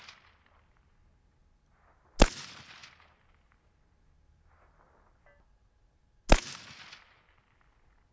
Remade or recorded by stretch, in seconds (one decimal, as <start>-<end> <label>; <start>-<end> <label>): 0.0-8.1 recorded